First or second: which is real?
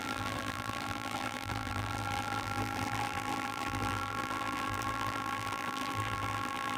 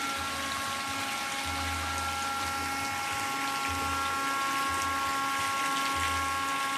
second